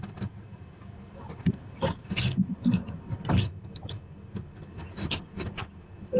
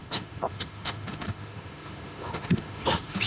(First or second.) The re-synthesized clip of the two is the second